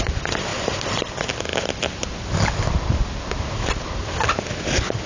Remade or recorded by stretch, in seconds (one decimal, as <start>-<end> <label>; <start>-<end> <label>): 0.0-5.1 recorded